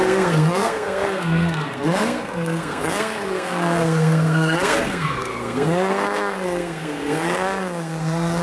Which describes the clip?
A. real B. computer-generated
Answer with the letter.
B